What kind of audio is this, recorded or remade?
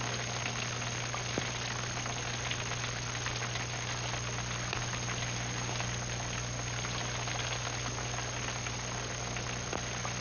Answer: recorded